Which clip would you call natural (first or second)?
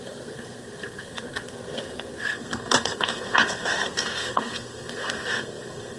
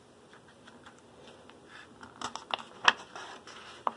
second